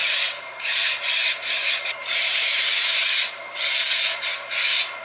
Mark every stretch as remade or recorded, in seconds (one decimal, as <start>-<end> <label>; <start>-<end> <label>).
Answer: 0.0-2.8 remade; 2.8-5.0 recorded